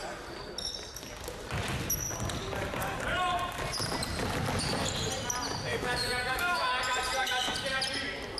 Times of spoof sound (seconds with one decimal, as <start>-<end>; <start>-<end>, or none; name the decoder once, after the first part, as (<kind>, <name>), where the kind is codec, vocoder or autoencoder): 5.7-6.7 (autoencoder, DAC-VAE)